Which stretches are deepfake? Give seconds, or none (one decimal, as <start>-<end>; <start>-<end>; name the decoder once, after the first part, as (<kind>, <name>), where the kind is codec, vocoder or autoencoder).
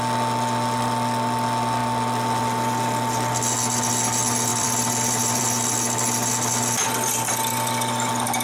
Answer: 4.5-5.4 (vocoder, BigVGAN v2)